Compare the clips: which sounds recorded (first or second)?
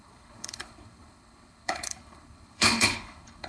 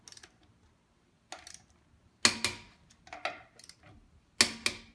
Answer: second